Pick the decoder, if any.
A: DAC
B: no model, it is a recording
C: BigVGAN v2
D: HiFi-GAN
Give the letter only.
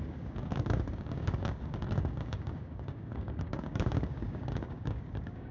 A